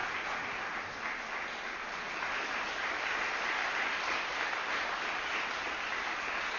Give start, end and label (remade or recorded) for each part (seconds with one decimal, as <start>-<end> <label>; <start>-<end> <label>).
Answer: 0.0-6.6 recorded